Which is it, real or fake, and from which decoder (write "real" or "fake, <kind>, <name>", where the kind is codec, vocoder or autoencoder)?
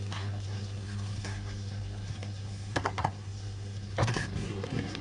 fake, codec, SNAC